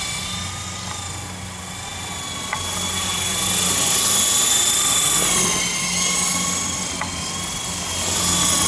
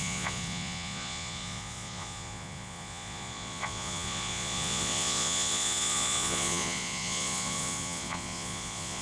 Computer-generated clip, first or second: second